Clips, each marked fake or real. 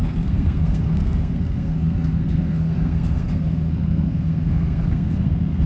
fake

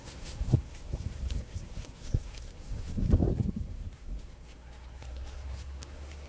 fake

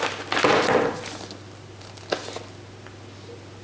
real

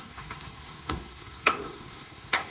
fake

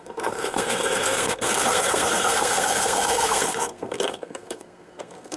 fake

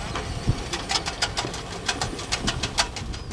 real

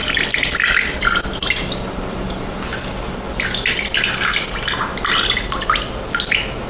real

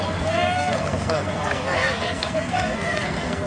fake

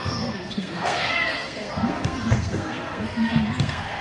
fake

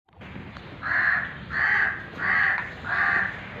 real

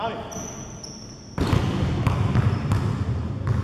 real